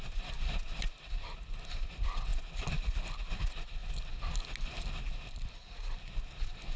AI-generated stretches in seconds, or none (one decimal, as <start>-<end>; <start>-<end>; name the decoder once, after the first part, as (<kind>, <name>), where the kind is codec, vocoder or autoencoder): none